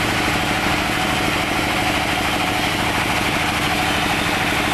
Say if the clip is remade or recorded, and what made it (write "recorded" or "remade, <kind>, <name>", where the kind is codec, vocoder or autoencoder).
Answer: remade, vocoder, BigVGAN v2